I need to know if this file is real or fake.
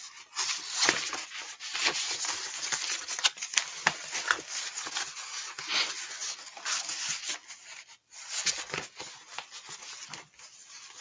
real